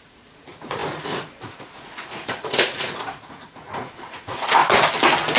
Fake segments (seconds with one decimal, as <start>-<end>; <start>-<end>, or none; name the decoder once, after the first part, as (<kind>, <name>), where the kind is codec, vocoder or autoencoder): 0.0-4.6 (vocoder, Vocos)